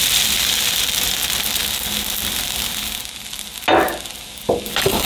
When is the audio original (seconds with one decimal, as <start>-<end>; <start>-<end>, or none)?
1.6-5.1